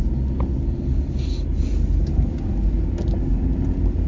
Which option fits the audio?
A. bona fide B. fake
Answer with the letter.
A